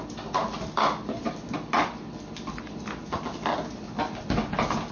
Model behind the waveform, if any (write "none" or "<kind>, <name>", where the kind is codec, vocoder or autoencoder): none